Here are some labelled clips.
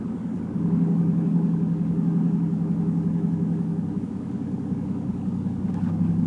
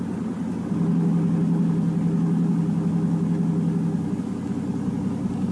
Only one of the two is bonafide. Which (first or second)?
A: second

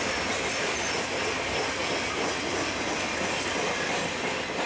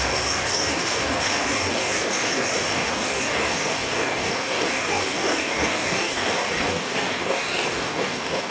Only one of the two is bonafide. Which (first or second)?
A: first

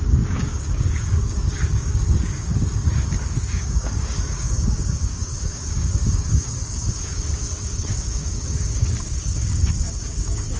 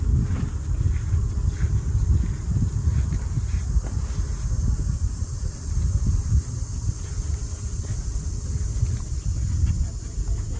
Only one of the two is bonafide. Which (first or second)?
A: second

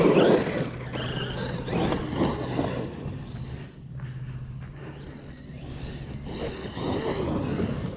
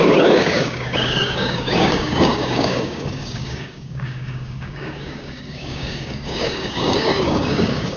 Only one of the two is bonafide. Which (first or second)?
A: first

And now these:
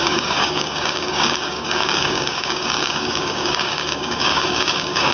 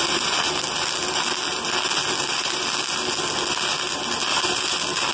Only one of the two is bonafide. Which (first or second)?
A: second